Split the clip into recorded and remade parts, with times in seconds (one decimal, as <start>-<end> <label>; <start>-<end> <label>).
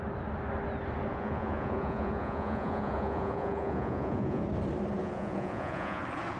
0.0-1.1 recorded; 1.1-4.4 remade; 4.4-5.0 recorded; 5.0-6.0 remade; 6.0-6.4 recorded